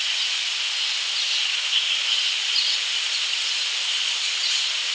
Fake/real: real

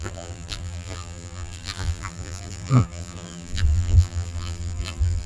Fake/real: fake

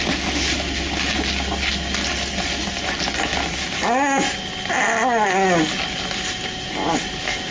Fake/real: real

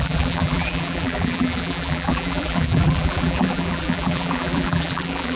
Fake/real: fake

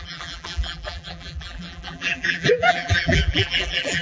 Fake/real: fake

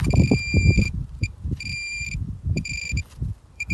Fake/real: fake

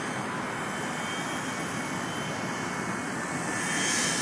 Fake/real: real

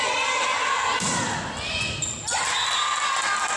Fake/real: real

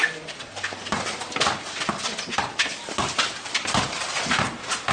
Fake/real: fake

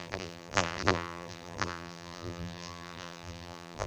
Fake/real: fake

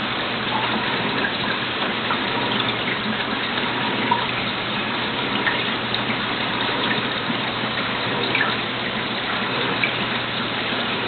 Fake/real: fake